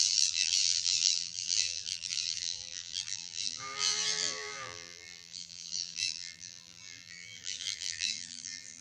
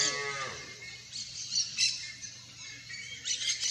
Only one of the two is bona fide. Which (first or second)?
second